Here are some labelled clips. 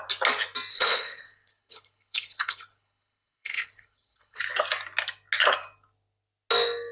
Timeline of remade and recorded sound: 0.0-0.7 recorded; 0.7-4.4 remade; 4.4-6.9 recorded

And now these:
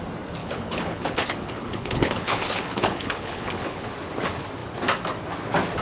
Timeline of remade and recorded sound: 0.0-0.4 recorded; 0.4-3.9 remade; 3.9-5.8 recorded

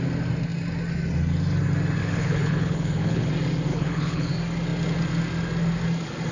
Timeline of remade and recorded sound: 0.0-2.0 recorded; 2.0-3.3 remade; 3.3-3.7 recorded; 3.7-4.3 remade; 4.3-6.3 recorded

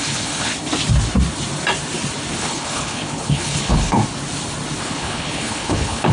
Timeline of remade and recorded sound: 0.0-0.5 remade; 0.5-2.3 recorded; 2.3-4.0 remade; 4.0-4.8 recorded; 4.8-6.1 remade

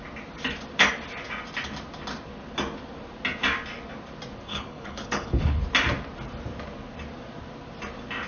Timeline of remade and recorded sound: 0.0-4.5 recorded; 4.5-5.6 remade; 5.6-8.3 recorded

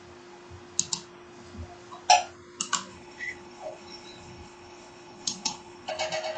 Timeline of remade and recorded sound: 0.0-2.9 recorded; 2.9-5.9 remade; 5.9-6.4 recorded

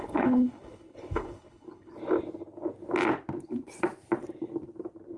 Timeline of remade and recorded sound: 0.0-1.9 remade; 1.9-5.2 recorded

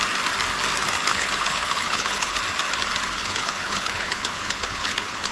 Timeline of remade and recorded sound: 0.0-1.1 recorded; 1.1-2.4 remade; 2.4-3.2 recorded; 3.2-5.3 remade